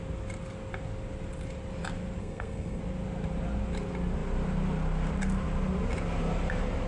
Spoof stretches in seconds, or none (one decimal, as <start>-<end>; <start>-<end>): 2.2-2.8